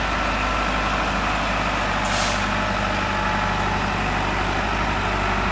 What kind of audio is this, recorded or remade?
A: recorded